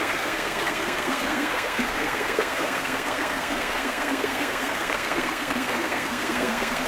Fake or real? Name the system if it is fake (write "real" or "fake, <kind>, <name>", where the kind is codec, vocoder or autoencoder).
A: fake, codec, SNAC